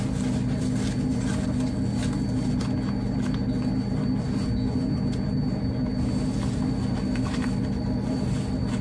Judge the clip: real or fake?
real